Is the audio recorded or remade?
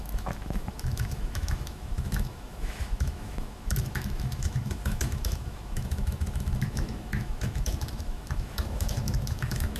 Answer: remade